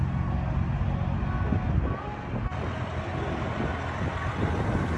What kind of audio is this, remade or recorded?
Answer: recorded